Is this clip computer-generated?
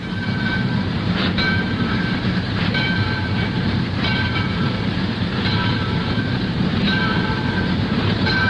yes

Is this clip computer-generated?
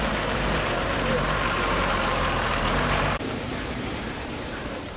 yes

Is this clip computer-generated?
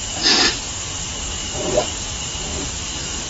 no